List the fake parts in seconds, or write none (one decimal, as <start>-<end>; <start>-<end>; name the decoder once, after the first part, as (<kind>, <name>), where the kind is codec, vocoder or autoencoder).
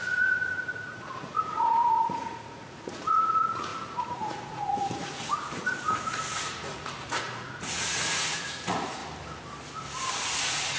0.0-9.0 (vocoder, Vocos); 10.1-10.8